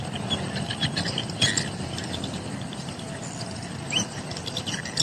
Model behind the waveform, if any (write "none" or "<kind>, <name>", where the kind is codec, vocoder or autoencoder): none